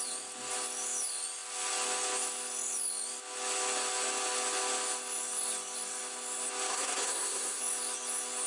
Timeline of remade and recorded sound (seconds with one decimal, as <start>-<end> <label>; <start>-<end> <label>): 0.0-6.7 recorded; 6.7-7.6 remade; 7.6-8.5 recorded